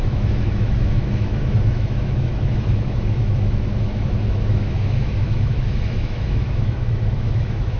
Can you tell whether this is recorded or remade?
remade